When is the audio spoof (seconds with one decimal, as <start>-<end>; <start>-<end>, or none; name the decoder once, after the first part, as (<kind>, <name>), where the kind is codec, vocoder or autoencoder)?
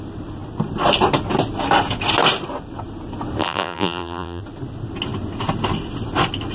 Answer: 3.4-4.4 (vocoder, BigVGAN v2)